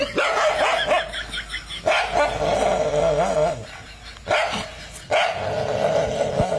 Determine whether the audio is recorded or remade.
recorded